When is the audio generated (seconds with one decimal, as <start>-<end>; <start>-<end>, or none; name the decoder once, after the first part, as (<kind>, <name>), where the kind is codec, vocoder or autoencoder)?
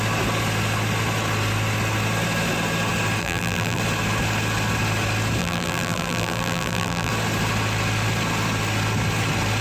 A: 3.2-3.8 (vocoder, BigVGAN v2); 5.4-7.1